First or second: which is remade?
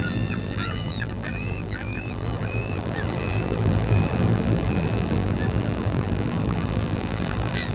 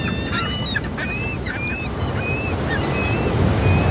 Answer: first